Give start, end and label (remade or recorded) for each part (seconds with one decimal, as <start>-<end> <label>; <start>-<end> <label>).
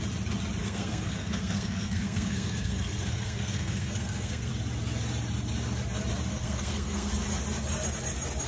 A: 0.0-0.6 recorded; 0.6-4.5 remade; 4.5-6.3 recorded; 6.3-7.1 remade; 7.1-8.5 recorded